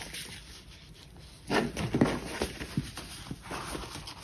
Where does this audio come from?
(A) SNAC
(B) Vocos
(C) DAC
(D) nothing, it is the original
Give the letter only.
D